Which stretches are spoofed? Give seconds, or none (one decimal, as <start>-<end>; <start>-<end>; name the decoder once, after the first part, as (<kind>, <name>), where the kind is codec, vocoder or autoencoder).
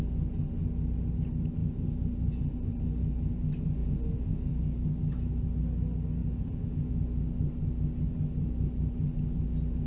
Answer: 1.6-2.8 (vocoder, Vocos); 3.8-4.5; 6.2-6.9